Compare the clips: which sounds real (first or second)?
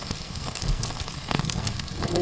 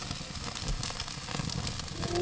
second